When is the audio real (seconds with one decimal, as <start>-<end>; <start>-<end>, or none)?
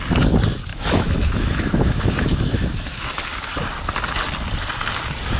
0.0-0.7; 3.1-5.4